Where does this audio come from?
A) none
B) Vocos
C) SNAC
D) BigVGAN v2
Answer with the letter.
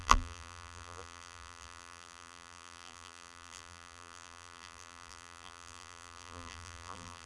D